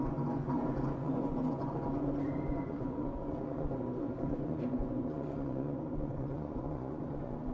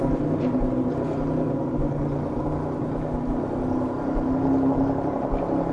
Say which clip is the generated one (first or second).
first